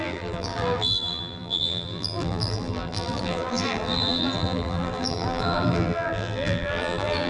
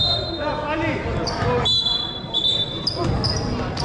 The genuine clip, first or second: second